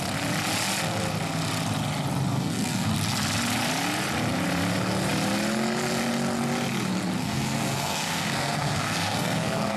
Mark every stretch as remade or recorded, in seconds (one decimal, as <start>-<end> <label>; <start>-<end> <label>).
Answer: 0.0-2.3 recorded; 2.3-2.9 remade; 2.9-7.2 recorded; 7.2-9.8 remade